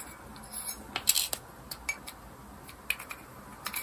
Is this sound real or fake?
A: real